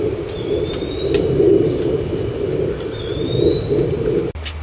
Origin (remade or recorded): recorded